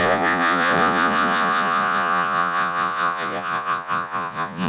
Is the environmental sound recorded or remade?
remade